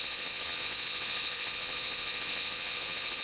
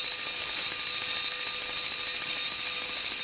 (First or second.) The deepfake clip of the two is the first